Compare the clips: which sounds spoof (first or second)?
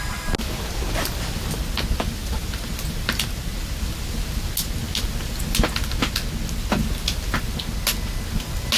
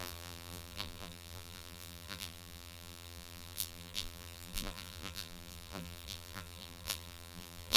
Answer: second